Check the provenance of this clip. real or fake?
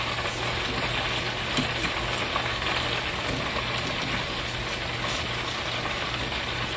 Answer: real